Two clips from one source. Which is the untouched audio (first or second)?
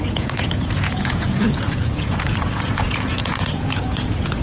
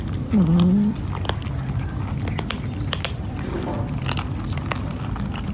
second